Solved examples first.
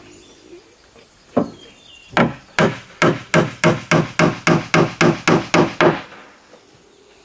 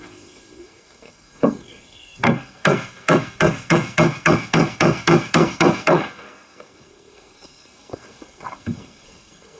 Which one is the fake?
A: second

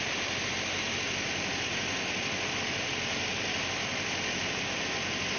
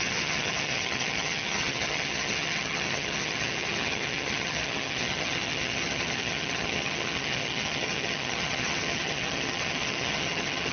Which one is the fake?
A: second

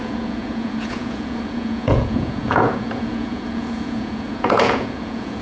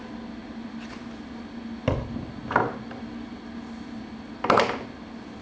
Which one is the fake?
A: first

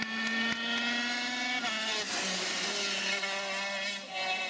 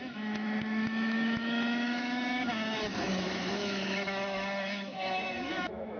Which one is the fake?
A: second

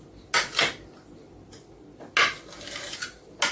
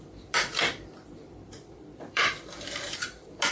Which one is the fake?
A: second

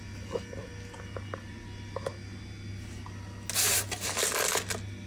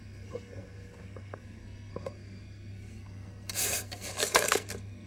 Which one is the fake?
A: second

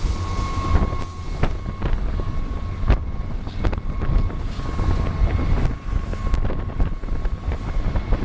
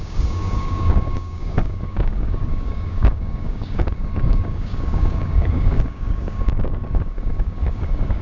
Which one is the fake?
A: second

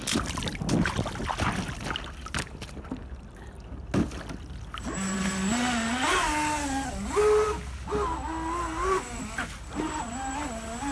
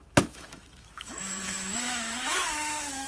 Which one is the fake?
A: second